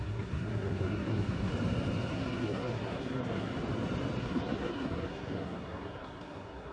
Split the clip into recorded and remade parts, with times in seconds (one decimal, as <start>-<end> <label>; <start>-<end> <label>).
0.0-1.5 remade; 1.5-2.1 recorded; 2.1-3.5 remade; 3.5-4.2 recorded; 4.2-6.7 remade